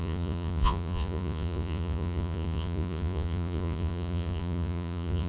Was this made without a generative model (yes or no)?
no